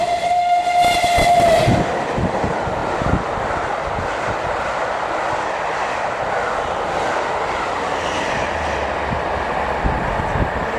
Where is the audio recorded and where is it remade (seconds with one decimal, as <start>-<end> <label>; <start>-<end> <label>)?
0.0-10.8 recorded

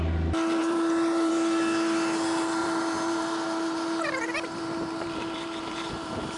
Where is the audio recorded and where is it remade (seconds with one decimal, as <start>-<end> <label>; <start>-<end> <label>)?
0.0-0.6 recorded; 0.6-1.3 remade; 1.3-2.6 recorded; 2.6-6.4 remade

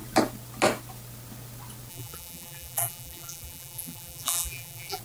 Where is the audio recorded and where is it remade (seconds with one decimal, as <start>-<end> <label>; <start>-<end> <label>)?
0.0-1.9 recorded; 1.9-5.0 remade

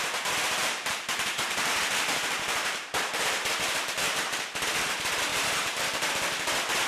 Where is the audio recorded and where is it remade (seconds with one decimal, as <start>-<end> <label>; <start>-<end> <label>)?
0.0-0.6 recorded; 0.6-4.7 remade; 4.7-5.3 recorded; 5.3-6.1 remade; 6.1-6.9 recorded

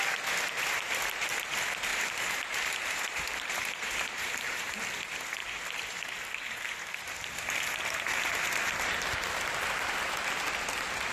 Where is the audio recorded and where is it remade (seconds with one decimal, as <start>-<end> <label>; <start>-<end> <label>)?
0.0-1.9 recorded; 1.9-4.8 remade; 4.8-11.1 recorded

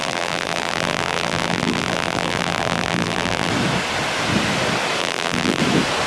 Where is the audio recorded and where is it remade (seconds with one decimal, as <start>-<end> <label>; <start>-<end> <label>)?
0.0-3.5 remade; 3.5-5.0 recorded; 5.0-5.6 remade; 5.6-6.1 recorded